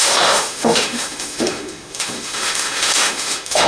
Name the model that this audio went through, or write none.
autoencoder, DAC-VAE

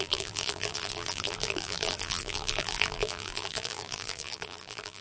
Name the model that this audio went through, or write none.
vocoder, BigVGAN v2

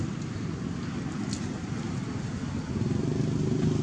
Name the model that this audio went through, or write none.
none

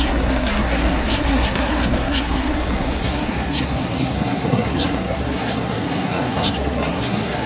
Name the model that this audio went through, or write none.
codec, SNAC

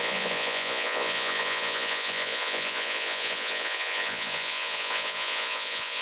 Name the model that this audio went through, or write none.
vocoder, Vocos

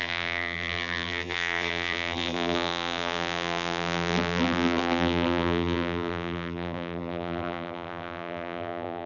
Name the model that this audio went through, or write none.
vocoder, BigVGAN v2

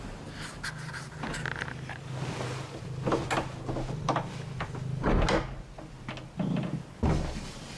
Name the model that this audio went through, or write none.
none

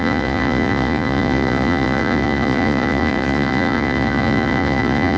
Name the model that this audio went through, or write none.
vocoder, Vocos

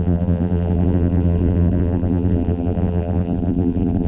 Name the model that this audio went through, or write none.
vocoder, BigVGAN v2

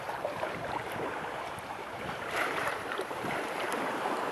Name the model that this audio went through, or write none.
vocoder, BigVGAN v2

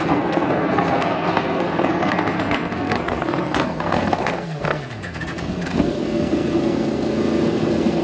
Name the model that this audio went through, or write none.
codec, SNAC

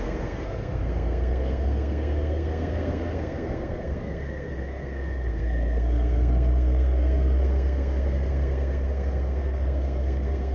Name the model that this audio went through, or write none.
codec, SNAC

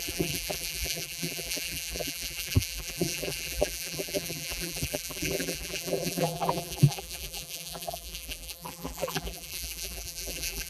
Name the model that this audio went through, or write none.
vocoder, BigVGAN v2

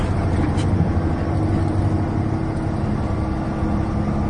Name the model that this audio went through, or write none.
none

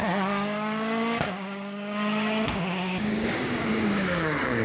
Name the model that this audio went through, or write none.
codec, DAC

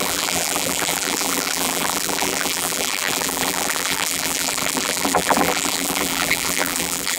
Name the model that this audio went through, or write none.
vocoder, BigVGAN v2